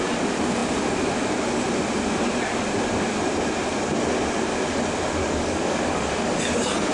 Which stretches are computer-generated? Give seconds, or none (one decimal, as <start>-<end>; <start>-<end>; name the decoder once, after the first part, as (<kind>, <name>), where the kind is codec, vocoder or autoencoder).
5.2-6.3 (codec, DAC)